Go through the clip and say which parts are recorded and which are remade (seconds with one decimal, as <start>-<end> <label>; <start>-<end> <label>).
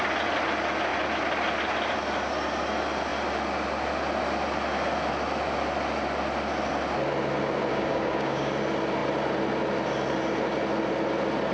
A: 0.0-7.7 recorded; 7.7-8.5 remade; 8.5-11.5 recorded